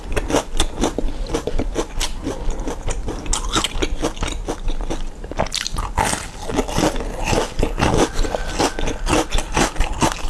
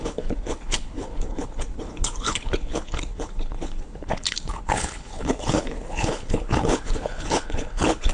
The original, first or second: first